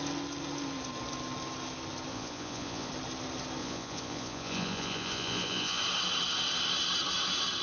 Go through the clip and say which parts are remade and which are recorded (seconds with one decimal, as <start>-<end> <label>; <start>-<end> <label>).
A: 0.0-2.1 recorded; 2.1-2.9 remade; 2.9-3.6 recorded; 3.6-5.8 remade; 5.8-7.6 recorded

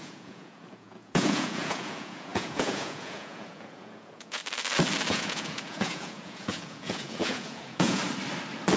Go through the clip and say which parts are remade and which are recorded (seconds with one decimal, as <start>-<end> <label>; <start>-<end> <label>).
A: 0.0-4.4 remade; 4.4-5.1 recorded; 5.1-8.0 remade; 8.0-8.8 recorded

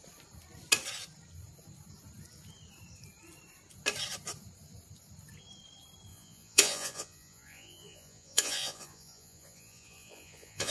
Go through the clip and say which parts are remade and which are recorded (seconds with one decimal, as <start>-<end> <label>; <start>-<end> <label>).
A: 0.0-6.1 recorded; 6.1-10.7 remade

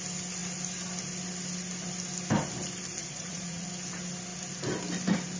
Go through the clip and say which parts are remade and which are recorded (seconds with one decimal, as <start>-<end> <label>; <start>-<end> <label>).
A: 0.0-3.0 recorded; 3.0-3.7 remade; 3.7-5.4 recorded

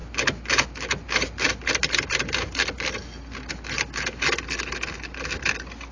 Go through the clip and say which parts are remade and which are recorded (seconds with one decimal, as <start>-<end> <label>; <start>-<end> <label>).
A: 0.0-5.9 recorded